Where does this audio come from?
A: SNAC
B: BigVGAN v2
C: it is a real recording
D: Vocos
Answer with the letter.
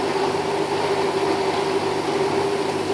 C